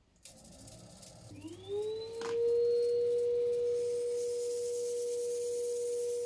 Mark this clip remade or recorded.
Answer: recorded